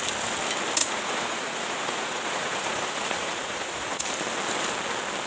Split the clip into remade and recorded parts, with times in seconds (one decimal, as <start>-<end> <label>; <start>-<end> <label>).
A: 0.0-0.8 recorded; 0.8-4.0 remade; 4.0-5.3 recorded